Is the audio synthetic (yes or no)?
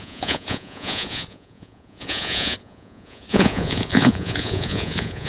yes